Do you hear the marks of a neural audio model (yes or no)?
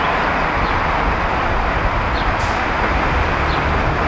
no